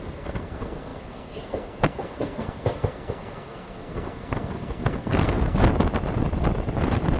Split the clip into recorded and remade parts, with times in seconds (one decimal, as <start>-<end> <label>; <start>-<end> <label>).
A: 0.0-5.6 remade; 5.6-7.2 recorded